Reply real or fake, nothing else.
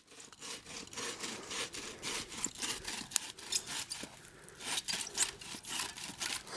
real